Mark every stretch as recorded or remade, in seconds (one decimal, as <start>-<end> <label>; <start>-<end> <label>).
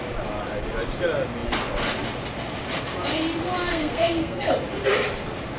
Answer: 0.0-3.7 recorded; 3.7-4.5 remade; 4.5-5.6 recorded